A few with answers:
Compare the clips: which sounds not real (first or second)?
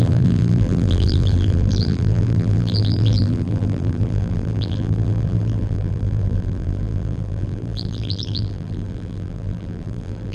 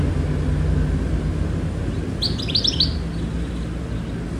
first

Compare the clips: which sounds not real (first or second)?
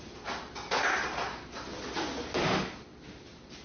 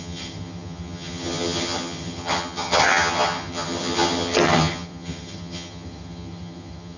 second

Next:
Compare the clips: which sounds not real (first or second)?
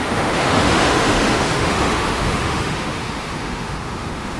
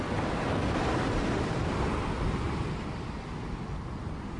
first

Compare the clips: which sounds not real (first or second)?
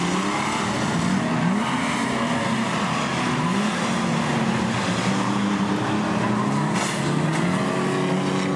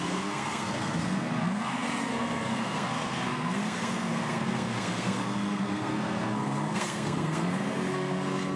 second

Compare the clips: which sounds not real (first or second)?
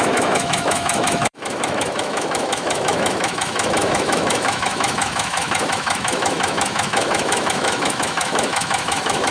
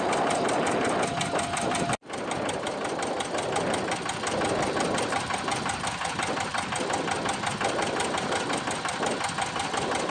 first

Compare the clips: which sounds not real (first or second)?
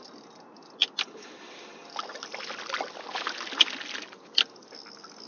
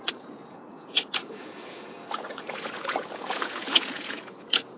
second